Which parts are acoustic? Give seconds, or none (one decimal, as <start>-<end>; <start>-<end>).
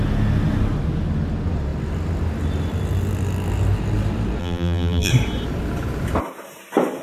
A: 0.0-4.4; 5.1-7.0